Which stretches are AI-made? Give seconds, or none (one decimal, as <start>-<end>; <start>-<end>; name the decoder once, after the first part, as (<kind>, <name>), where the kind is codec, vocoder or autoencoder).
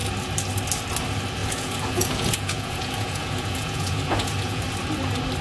1.4-4.6 (vocoder, Vocos)